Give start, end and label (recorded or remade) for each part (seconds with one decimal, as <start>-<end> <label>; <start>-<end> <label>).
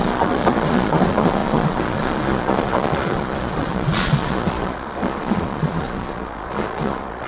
0.0-7.3 remade